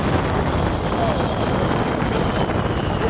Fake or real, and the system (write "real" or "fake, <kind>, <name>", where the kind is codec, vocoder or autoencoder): real